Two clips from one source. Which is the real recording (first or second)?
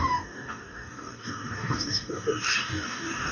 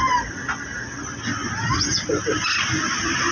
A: second